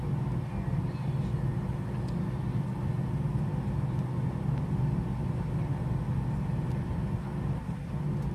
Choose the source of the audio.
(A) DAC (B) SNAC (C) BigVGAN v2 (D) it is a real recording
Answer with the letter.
D